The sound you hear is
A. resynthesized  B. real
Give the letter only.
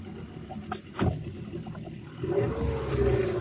B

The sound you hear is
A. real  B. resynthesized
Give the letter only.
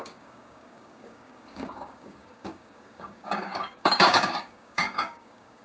B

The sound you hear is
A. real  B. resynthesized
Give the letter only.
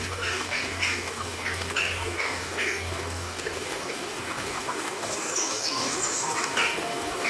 B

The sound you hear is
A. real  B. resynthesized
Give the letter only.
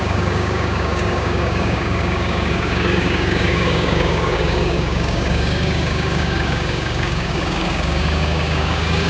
B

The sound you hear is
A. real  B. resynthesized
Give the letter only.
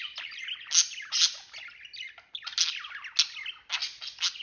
A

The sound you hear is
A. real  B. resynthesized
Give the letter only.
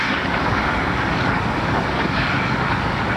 B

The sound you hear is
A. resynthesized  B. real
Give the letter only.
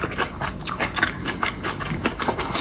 A